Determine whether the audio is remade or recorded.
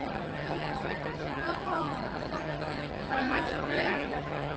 remade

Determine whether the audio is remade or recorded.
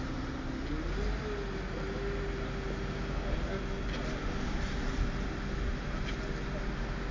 recorded